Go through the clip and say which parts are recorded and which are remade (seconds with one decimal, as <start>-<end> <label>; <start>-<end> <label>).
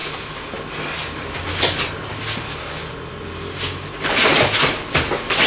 0.0-5.5 recorded